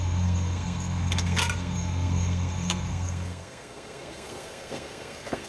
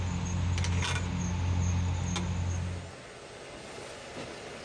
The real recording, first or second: second